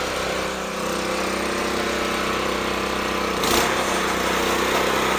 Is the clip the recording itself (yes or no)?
yes